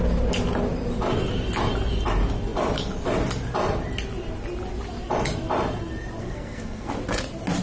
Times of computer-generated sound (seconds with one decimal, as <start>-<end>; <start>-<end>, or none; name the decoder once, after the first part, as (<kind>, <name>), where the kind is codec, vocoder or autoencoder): 6.2-6.9 (codec, SNAC)